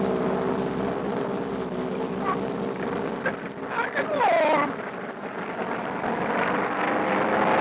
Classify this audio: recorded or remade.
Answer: recorded